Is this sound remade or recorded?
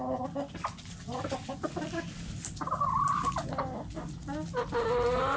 recorded